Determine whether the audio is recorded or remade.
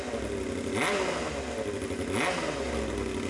recorded